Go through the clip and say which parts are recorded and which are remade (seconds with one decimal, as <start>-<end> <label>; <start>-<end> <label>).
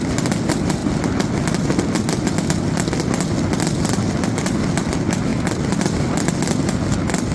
0.0-7.3 recorded